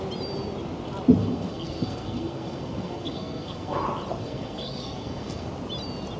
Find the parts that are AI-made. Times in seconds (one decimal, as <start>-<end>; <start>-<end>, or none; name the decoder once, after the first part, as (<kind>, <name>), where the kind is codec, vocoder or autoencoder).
1.2-3.8 (codec, SNAC); 4.2-5.5